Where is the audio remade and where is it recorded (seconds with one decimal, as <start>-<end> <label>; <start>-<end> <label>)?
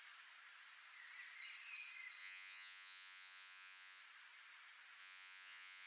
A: 0.0-2.2 recorded; 2.2-4.0 remade; 4.0-5.0 recorded; 5.0-5.9 remade